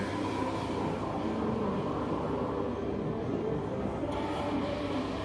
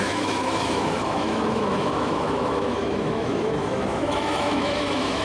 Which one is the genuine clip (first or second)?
first